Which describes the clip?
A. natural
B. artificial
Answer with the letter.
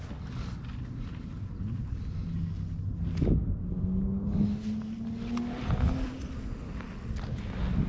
A